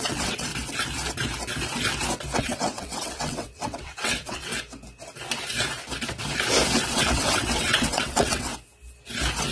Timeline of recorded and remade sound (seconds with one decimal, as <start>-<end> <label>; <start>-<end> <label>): 0.0-0.5 remade; 0.5-2.4 recorded; 2.4-4.5 remade; 4.5-6.9 recorded; 6.9-8.5 remade; 8.5-9.5 recorded